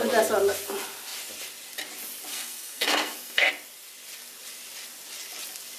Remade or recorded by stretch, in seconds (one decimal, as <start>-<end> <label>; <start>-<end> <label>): 0.0-2.3 recorded; 2.3-3.5 remade; 3.5-5.8 recorded